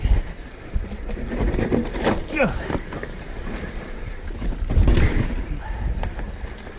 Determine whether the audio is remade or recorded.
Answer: remade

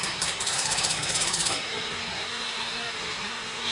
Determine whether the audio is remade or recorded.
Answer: remade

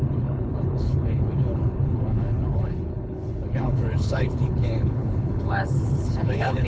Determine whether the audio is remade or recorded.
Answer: remade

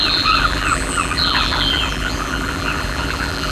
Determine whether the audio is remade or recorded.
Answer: remade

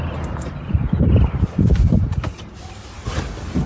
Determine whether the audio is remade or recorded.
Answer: remade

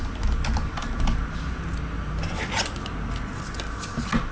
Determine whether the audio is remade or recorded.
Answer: recorded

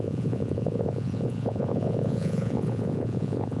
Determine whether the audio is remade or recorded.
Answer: remade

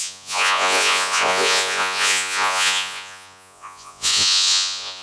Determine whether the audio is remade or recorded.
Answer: remade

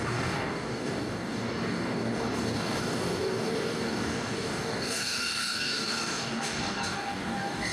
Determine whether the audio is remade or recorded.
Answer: remade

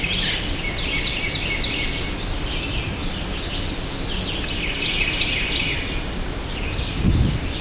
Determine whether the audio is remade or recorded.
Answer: recorded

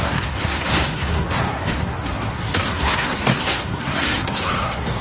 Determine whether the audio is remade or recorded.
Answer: remade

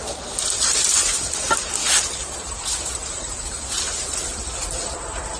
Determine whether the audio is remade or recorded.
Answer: recorded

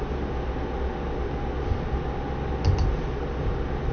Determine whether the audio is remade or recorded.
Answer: recorded